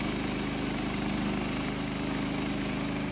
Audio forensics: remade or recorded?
recorded